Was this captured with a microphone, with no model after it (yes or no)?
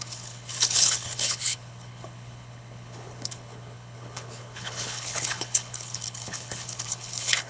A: no